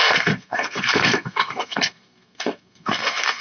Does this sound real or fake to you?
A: fake